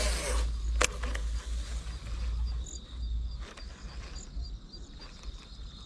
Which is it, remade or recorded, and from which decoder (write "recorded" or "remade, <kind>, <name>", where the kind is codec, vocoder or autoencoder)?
recorded